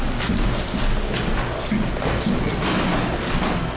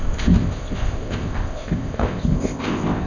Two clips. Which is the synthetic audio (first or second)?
second